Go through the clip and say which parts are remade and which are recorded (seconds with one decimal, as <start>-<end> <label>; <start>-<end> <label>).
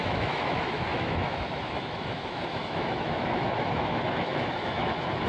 0.0-5.3 remade